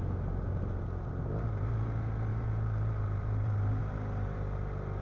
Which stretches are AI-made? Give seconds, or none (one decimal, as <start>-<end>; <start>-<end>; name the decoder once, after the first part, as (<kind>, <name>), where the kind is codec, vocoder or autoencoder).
2.3-3.8 (vocoder, BigVGAN v2)